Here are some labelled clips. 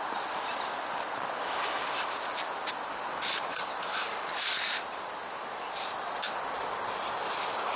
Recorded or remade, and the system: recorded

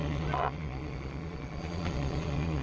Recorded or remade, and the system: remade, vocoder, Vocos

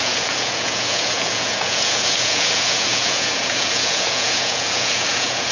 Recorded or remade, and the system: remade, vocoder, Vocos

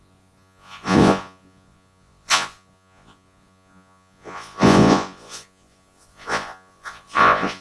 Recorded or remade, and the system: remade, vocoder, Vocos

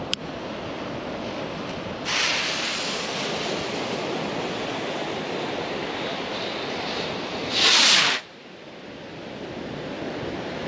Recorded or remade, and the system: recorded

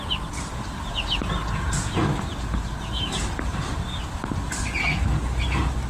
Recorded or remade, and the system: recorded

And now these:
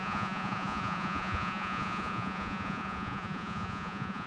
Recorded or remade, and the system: remade, vocoder, Vocos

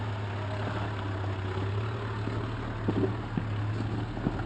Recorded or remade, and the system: recorded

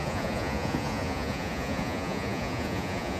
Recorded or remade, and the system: remade, vocoder, Vocos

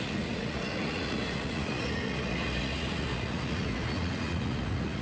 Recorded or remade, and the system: remade, vocoder, Vocos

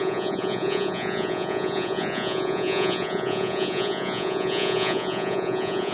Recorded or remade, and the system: remade, vocoder, Vocos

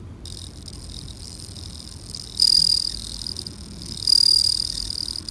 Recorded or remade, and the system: recorded